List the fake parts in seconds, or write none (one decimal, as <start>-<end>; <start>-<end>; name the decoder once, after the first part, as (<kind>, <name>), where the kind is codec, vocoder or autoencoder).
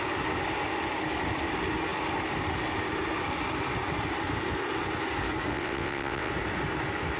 5.5-6.3 (vocoder, WaveNeXt)